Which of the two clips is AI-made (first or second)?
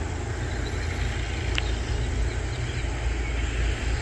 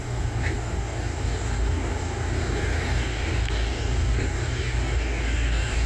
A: second